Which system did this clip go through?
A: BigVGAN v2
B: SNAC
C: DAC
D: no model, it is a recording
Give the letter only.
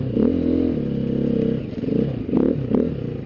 D